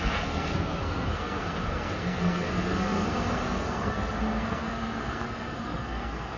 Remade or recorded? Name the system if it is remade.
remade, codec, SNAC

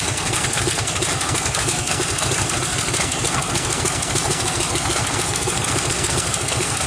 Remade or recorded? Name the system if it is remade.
remade, codec, SNAC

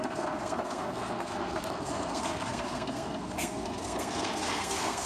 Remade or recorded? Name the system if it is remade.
remade, codec, SNAC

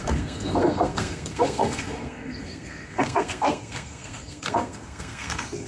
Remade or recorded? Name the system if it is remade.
remade, codec, SNAC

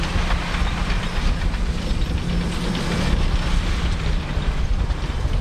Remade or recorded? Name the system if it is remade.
recorded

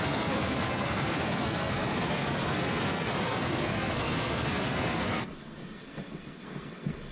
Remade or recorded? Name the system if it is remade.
remade, codec, SNAC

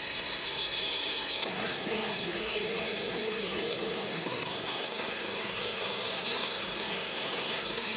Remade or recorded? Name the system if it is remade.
remade, codec, SNAC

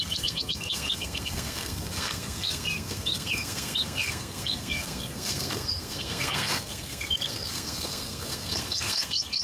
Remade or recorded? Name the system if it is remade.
remade, codec, SNAC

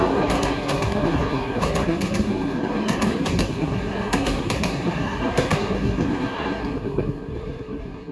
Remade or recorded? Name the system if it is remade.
remade, codec, SNAC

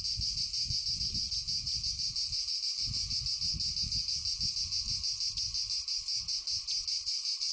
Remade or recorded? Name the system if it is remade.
recorded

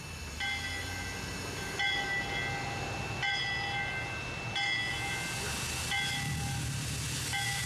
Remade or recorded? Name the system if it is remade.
recorded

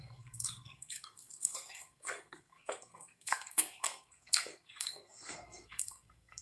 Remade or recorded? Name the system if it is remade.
remade, codec, SNAC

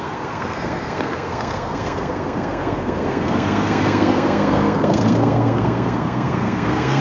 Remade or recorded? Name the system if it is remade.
remade, codec, SNAC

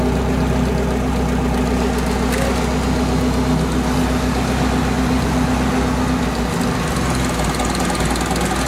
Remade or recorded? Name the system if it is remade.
recorded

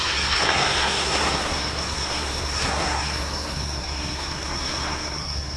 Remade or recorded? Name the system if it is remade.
remade, codec, SNAC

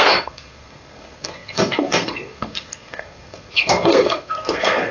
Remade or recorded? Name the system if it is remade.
remade, codec, SNAC